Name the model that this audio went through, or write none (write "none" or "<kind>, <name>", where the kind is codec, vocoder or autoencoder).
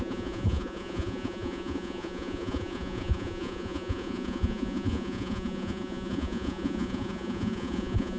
vocoder, Vocos